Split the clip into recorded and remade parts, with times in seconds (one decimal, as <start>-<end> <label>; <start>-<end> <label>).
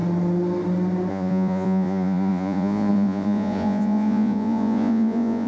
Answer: 0.0-1.1 recorded; 1.1-5.5 remade